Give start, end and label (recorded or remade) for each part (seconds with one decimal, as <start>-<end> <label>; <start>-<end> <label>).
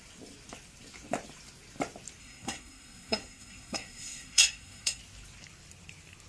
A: 0.0-2.2 recorded; 2.2-5.0 remade; 5.0-6.3 recorded